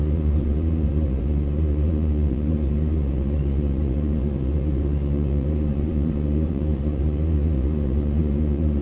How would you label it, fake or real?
fake